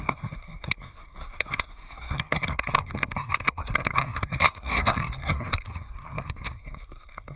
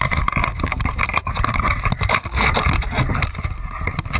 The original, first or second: second